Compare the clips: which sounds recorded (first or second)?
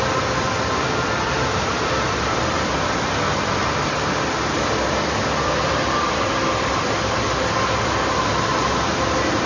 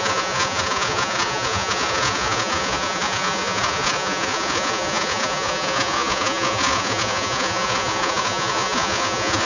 first